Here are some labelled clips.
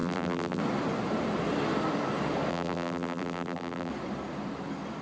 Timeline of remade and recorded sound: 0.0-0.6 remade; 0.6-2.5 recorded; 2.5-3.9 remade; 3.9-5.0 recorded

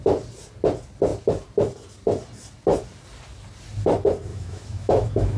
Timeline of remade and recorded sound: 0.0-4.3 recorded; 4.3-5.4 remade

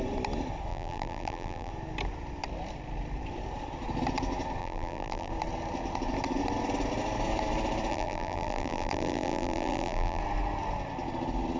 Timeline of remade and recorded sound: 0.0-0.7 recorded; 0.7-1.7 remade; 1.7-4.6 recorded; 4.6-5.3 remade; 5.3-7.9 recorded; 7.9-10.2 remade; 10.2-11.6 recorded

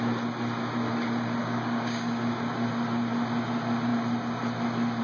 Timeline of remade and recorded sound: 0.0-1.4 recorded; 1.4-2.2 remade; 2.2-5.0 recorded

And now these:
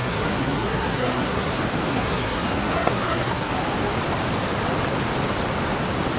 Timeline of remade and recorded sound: 0.0-1.5 remade; 1.5-1.9 recorded; 1.9-3.5 remade; 3.5-6.2 recorded

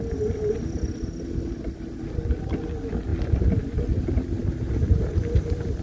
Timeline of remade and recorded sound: 0.0-5.8 recorded

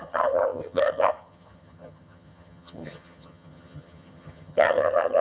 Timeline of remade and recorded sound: 0.0-5.2 remade

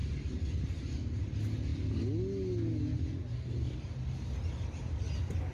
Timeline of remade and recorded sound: 0.0-0.8 remade; 0.8-5.5 recorded